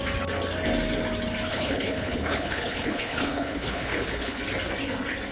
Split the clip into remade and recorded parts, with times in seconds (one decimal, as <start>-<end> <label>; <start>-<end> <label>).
0.0-1.5 recorded; 1.5-4.4 remade; 4.4-5.3 recorded